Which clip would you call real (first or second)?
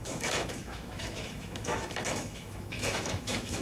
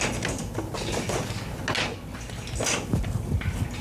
second